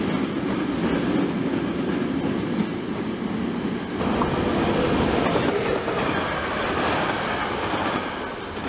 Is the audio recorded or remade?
recorded